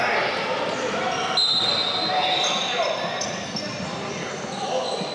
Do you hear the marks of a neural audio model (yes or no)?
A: no